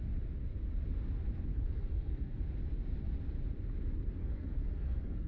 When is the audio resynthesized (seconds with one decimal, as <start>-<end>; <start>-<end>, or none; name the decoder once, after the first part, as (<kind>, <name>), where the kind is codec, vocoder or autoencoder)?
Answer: 1.5-2.4 (codec, SNAC); 4.2-5.3